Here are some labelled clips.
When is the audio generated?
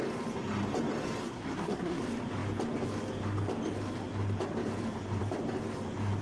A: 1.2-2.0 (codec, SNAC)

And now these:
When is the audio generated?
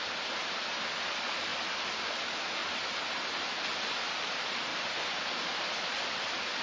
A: none